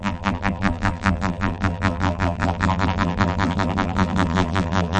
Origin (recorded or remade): remade